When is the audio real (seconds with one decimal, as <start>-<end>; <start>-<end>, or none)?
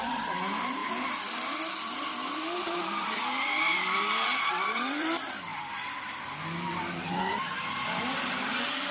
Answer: none